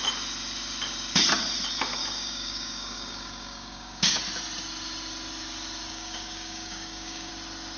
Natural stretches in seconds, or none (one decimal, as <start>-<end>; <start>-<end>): 0.0-2.0; 4.2-5.9; 7.3-7.8